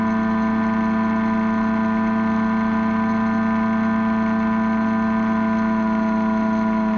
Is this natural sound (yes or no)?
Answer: yes